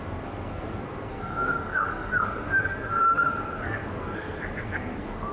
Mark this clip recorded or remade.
remade